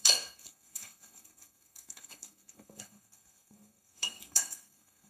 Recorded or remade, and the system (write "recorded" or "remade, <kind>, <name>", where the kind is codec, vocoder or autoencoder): remade, codec, SNAC